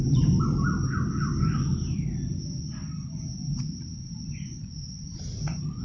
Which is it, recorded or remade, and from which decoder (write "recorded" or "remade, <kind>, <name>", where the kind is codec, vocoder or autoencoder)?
recorded